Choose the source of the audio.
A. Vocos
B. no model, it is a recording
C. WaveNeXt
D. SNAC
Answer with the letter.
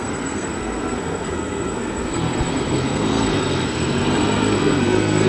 D